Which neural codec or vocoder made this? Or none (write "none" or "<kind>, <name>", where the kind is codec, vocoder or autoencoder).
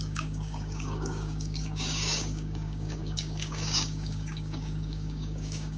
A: codec, DAC